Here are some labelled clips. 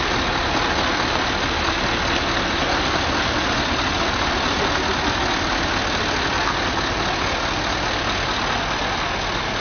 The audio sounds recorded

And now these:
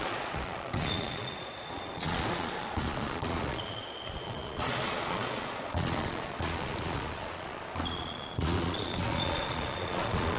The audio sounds remade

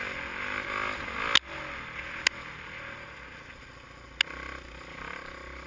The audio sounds recorded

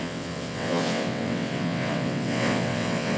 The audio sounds remade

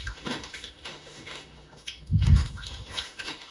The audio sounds remade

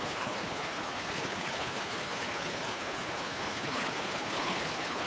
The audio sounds remade